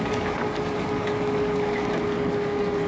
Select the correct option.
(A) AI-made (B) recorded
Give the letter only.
A